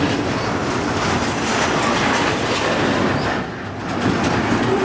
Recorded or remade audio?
recorded